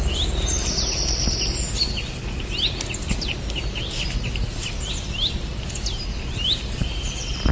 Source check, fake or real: real